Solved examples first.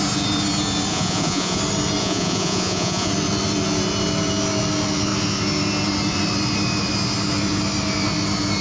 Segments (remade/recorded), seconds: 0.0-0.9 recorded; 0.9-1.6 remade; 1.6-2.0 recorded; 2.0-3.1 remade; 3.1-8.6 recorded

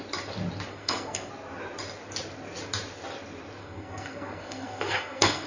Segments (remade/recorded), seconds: 0.0-0.7 recorded; 0.7-1.3 remade; 1.3-3.6 recorded; 3.6-5.5 remade